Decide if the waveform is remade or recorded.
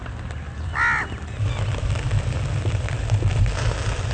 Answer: recorded